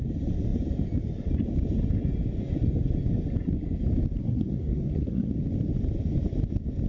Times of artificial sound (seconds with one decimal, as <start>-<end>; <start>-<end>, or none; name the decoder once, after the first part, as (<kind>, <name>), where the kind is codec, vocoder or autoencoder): 4.2-5.3 (codec, SNAC)